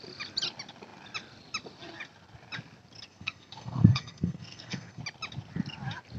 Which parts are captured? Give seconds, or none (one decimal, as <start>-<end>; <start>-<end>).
0.0-3.1; 5.0-6.2